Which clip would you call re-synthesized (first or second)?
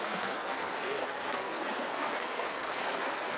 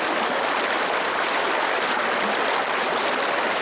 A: first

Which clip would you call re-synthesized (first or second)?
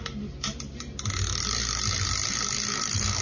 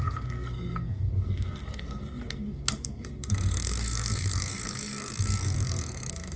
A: second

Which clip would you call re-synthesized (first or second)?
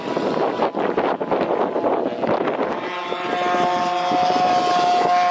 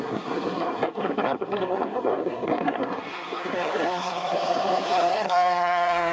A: second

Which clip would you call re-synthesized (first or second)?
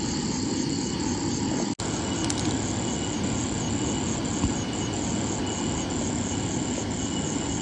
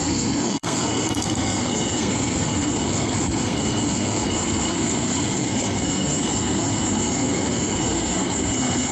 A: second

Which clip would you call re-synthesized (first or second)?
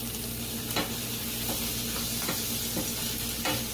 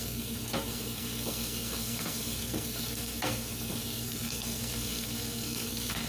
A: second